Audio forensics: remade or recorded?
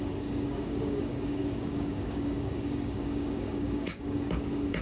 remade